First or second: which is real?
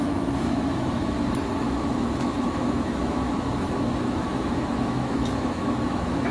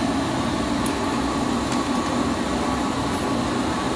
second